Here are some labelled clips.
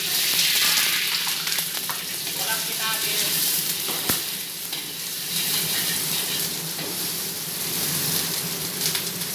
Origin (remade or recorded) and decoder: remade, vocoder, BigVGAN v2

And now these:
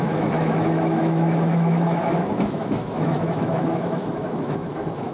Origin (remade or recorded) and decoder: remade, autoencoder, DAC-VAE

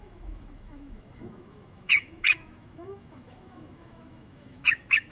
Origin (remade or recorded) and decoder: remade, autoencoder, DAC-VAE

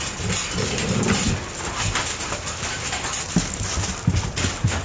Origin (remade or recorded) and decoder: recorded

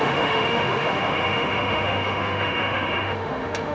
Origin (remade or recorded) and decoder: remade, autoencoder, DAC-VAE